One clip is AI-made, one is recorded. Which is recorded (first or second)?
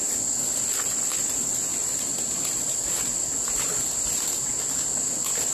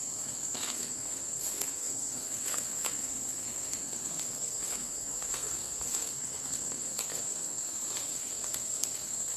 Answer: first